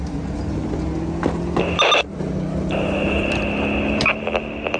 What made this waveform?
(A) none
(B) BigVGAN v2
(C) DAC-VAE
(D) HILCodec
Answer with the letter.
A